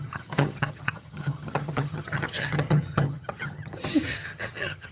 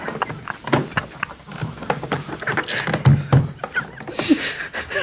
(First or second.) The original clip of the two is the second